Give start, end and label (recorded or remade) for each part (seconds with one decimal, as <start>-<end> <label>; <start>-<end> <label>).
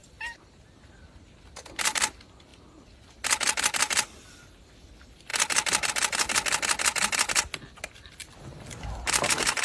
0.0-0.9 remade; 0.9-9.6 recorded